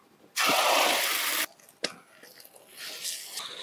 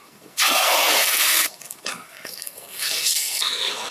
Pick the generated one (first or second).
second